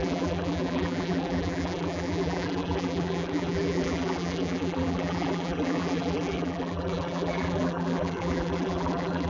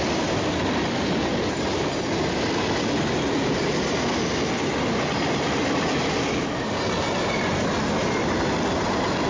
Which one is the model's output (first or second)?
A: first